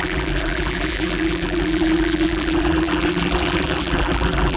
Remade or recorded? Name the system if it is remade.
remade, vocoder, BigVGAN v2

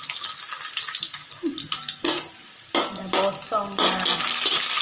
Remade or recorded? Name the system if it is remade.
recorded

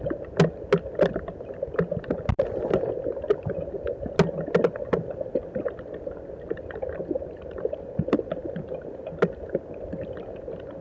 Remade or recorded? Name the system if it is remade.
recorded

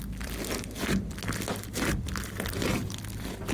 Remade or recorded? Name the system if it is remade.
recorded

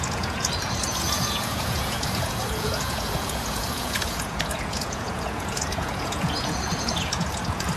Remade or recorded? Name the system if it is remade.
remade, vocoder, Vocos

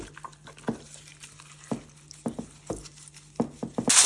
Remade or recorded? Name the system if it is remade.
recorded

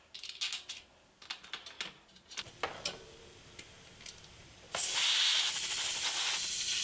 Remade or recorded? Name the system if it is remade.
recorded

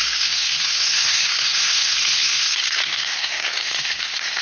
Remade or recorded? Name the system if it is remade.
remade, codec, SNAC